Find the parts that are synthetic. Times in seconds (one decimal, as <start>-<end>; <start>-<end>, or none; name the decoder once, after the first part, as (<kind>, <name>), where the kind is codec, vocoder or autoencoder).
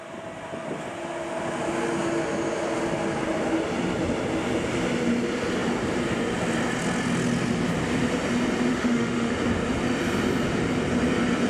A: 8.7-9.3 (autoencoder, DAC-VAE)